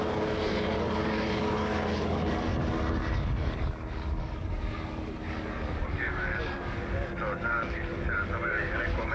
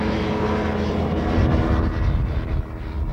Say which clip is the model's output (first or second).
first